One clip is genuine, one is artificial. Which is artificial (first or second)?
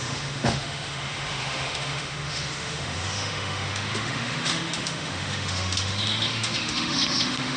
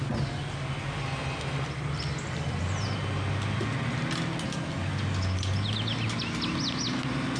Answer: first